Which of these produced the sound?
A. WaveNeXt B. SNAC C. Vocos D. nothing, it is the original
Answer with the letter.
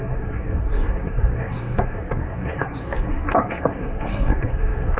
B